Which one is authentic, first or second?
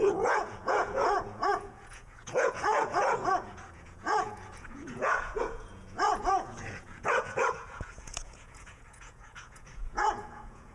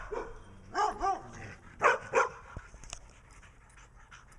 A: second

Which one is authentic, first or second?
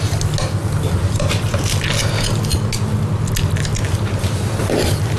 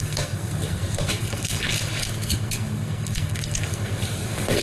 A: first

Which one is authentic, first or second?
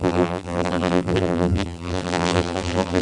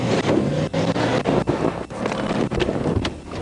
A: second